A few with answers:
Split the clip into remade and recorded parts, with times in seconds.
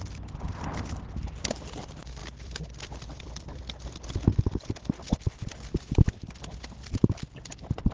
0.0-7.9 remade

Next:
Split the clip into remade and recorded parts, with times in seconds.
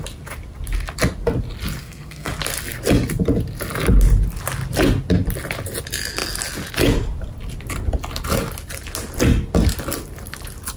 0.0-1.8 recorded; 1.8-2.3 remade; 2.3-10.8 recorded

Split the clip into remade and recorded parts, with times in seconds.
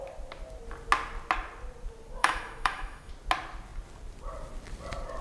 0.0-2.2 recorded; 2.2-3.1 remade; 3.1-5.2 recorded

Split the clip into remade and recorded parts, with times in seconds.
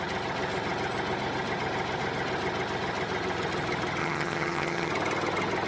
0.0-4.0 recorded; 4.0-4.9 remade; 4.9-5.7 recorded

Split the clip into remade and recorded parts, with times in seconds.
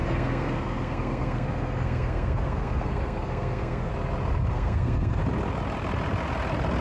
0.0-3.9 remade; 3.9-4.5 recorded; 4.5-5.2 remade; 5.2-6.8 recorded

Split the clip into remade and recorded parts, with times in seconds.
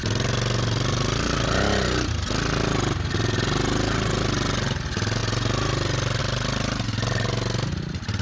0.0-8.2 recorded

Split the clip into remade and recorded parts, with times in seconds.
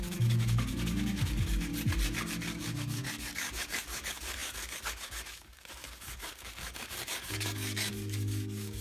0.0-1.7 remade; 1.7-2.6 recorded; 2.6-8.8 remade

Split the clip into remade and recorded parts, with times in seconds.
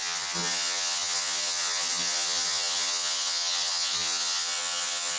0.0-5.2 remade